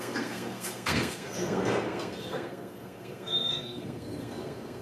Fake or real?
fake